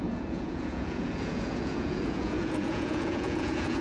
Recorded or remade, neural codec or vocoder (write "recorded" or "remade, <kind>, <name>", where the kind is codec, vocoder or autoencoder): remade, vocoder, Vocos